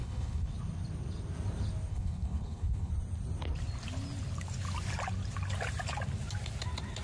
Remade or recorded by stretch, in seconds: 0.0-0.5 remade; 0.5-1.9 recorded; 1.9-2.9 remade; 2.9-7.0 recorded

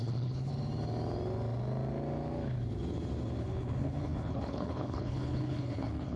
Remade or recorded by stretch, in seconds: 0.0-0.5 remade; 0.5-3.4 recorded; 3.4-6.2 remade

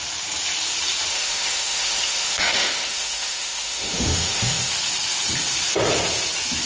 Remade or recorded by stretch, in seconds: 0.0-1.1 recorded; 1.1-4.7 remade; 4.7-6.7 recorded

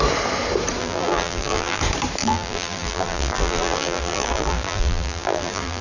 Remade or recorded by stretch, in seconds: 0.0-0.8 recorded; 0.8-1.8 remade; 1.8-2.2 recorded; 2.2-5.8 remade

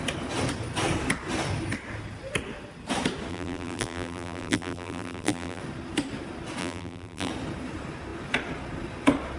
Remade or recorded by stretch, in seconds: 0.0-3.3 recorded; 3.3-5.6 remade; 5.6-6.6 recorded; 6.6-7.3 remade; 7.3-9.4 recorded

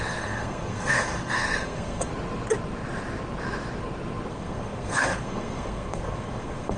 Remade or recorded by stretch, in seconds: 0.0-2.1 remade; 2.1-4.3 recorded; 4.3-6.8 remade